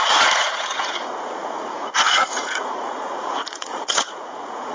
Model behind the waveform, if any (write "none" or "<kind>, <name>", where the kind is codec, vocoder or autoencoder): vocoder, Vocos